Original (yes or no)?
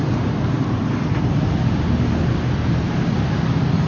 yes